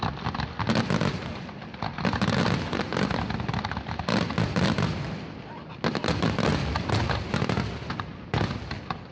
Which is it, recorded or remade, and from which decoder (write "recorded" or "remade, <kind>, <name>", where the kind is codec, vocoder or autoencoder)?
recorded